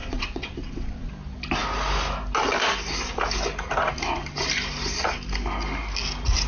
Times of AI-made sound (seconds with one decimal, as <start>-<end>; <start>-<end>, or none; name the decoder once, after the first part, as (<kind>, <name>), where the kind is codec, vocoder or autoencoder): 0.0-1.1 (vocoder, WaveNeXt)